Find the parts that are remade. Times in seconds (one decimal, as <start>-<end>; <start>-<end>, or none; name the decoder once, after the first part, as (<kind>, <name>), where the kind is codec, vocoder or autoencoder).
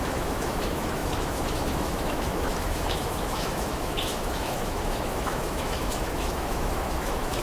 0.0-7.4 (autoencoder, DAC-VAE)